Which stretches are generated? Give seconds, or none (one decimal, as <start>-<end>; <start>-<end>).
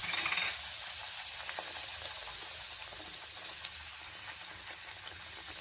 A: none